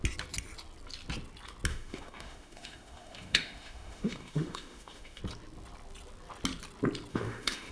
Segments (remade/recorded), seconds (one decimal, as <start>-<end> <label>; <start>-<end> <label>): 0.0-1.7 recorded; 1.7-5.2 remade; 5.2-7.1 recorded; 7.1-7.7 remade